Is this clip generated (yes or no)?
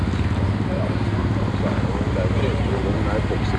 no